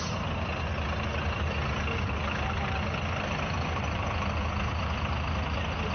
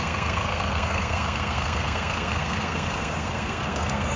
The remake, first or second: second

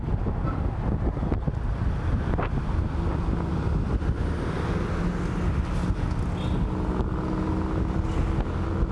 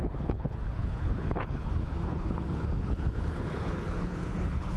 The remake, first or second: second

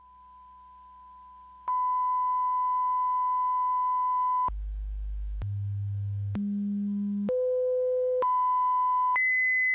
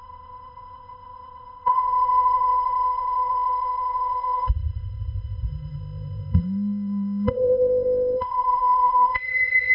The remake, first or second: second